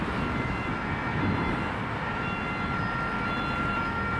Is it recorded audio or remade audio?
recorded